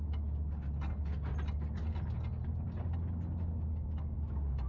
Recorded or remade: recorded